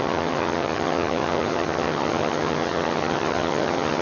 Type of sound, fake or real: fake